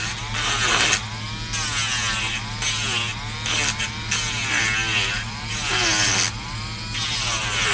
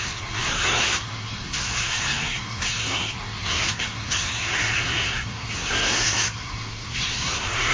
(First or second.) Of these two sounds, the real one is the first